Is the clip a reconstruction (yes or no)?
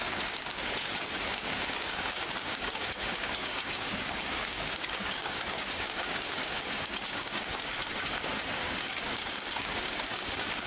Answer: yes